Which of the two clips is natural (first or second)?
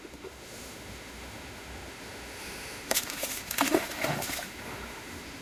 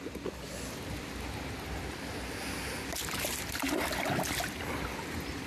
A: second